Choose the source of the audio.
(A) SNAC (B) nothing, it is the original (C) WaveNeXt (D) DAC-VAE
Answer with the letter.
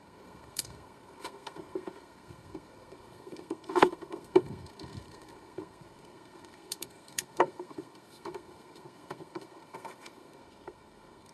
A